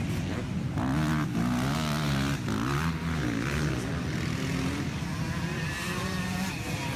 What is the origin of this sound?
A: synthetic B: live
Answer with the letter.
B